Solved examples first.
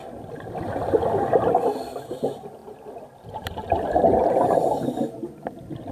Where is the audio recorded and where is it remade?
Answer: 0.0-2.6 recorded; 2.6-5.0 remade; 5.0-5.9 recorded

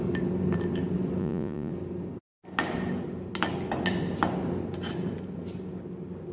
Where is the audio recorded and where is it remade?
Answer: 0.0-1.2 recorded; 1.2-1.7 remade; 1.7-6.3 recorded